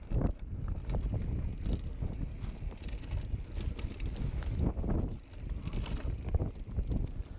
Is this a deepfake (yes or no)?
no